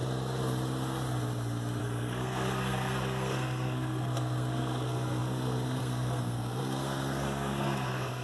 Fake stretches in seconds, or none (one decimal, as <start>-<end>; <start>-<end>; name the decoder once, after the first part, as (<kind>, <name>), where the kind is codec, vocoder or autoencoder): 1.8-8.2 (codec, SNAC)